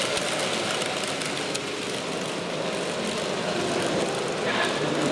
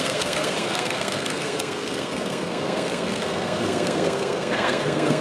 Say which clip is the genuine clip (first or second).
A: first